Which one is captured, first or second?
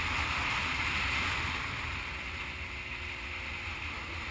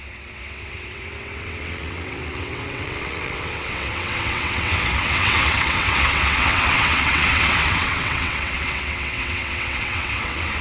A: first